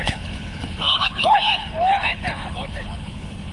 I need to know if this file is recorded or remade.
remade